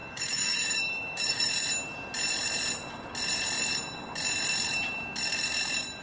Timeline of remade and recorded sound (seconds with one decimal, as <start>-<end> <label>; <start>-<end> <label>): 0.0-1.5 remade; 1.5-6.0 recorded